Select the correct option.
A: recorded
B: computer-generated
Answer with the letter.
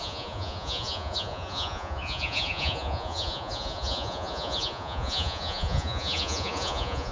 B